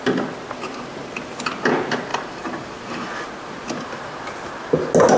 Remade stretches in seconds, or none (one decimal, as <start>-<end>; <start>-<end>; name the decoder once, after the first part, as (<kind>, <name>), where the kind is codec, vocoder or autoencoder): 2.1-3.5 (vocoder, BigVGAN v2)